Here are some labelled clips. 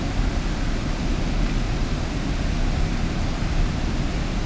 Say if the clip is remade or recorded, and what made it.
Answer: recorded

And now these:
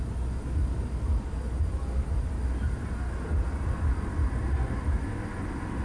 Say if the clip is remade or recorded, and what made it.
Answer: recorded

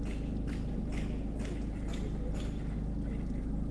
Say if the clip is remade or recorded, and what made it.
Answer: recorded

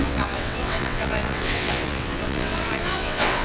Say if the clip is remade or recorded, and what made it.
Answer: remade, vocoder, WaveNeXt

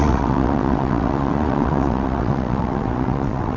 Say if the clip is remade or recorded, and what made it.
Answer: remade, vocoder, WaveNeXt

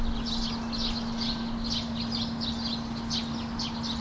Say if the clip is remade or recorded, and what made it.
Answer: recorded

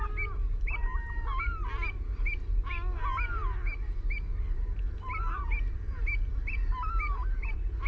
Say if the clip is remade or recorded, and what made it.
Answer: recorded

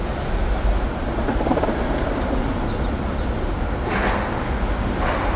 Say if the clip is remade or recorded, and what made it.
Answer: recorded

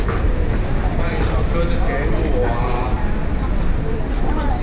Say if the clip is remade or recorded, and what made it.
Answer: recorded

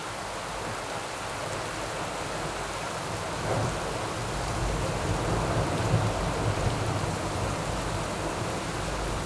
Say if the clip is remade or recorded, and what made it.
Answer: recorded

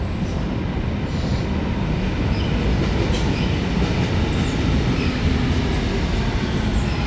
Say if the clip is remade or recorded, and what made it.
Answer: recorded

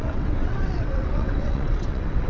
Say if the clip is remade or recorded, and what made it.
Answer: remade, vocoder, WaveNeXt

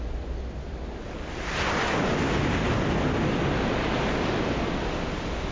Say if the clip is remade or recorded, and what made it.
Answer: recorded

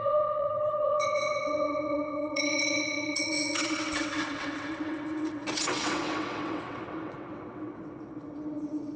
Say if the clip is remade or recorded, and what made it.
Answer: remade, vocoder, WaveNeXt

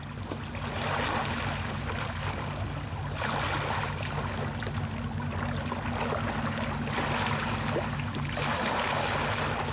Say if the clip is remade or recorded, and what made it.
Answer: recorded